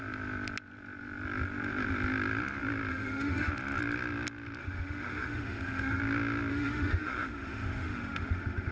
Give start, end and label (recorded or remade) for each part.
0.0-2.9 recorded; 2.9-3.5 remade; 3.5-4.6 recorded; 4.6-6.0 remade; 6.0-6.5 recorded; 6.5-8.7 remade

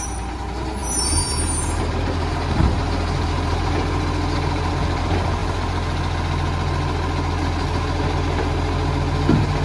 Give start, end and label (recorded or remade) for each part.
0.0-9.6 recorded